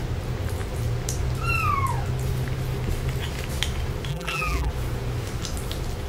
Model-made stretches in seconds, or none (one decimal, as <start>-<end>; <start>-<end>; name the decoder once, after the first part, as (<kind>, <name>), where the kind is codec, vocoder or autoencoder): 4.1-4.7 (vocoder, BigVGAN v2)